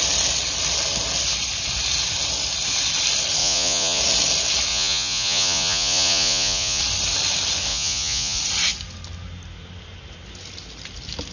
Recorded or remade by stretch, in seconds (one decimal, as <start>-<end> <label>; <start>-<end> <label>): 0.0-3.4 recorded; 3.4-4.0 remade; 4.0-4.7 recorded; 4.7-6.8 remade; 6.8-7.7 recorded; 7.7-8.4 remade; 8.4-11.3 recorded